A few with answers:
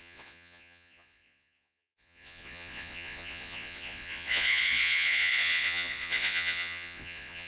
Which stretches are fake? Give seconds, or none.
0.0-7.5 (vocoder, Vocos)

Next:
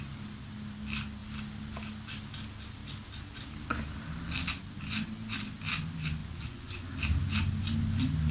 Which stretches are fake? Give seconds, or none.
6.2-6.9 (vocoder, Vocos)

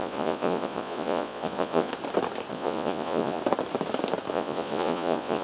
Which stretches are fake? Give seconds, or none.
0.0-1.9 (vocoder, Vocos); 2.5-3.4; 4.3-5.4